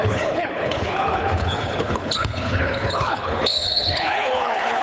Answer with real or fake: fake